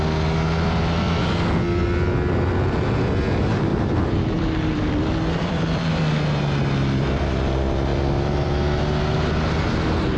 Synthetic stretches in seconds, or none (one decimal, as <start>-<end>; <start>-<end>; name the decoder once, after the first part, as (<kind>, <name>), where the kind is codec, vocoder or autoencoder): 3.7-6.0 (vocoder, BigVGAN v2); 7.9-8.5